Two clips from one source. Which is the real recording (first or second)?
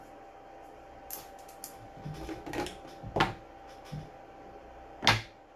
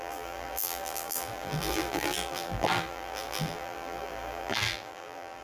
first